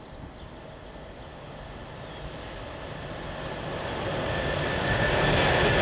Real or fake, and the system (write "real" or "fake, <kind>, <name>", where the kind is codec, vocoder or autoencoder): real